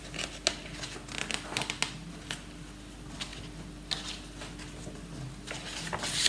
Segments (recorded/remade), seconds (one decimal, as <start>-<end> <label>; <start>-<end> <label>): 0.0-6.3 recorded